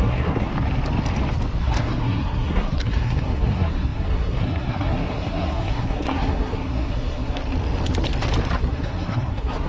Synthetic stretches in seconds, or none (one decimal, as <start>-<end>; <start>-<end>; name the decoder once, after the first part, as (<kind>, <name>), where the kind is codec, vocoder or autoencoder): 0.0-0.5 (codec, SNAC); 1.6-7.4; 8.6-9.7

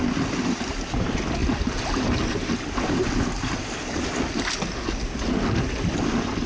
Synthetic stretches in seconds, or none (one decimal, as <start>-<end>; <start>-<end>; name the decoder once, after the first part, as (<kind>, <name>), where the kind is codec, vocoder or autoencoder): none

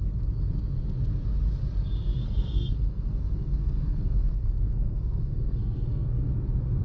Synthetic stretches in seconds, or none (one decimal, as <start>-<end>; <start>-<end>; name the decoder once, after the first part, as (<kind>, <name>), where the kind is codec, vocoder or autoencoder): 2.2-6.3 (codec, SNAC)